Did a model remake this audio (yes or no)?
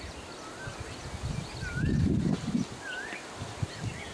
no